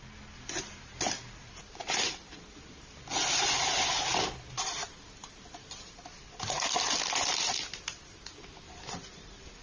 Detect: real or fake real